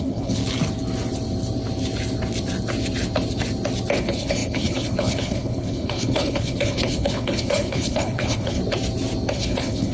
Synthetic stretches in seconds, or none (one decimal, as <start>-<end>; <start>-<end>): 0.0-0.4; 4.0-8.6; 9.3-9.9

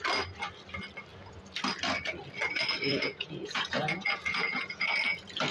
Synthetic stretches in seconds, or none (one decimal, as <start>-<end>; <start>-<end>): 2.9-4.9

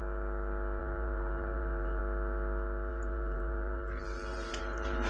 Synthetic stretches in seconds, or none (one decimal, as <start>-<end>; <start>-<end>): 0.8-2.0; 2.9-5.1

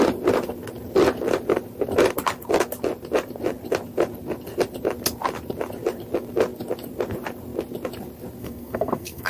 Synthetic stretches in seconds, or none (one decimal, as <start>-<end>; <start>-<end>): 8.4-9.3

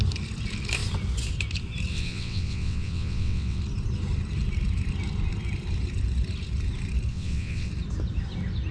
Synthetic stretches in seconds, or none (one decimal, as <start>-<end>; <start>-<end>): 1.9-3.6; 7.1-7.7

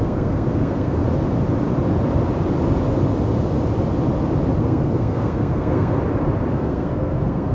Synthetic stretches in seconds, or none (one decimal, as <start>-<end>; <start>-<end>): 0.0-1.0; 4.6-6.0; 6.5-7.5

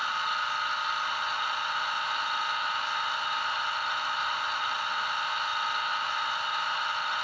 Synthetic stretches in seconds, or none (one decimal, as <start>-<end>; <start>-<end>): 5.5-6.1

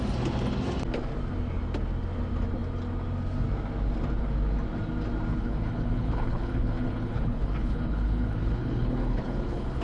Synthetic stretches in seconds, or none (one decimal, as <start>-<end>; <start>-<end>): 5.3-9.8